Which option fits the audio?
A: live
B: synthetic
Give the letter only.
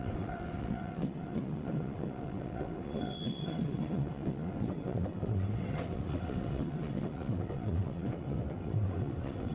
B